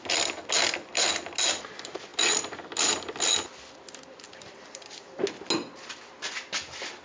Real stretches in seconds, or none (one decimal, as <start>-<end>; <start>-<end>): 0.0-7.0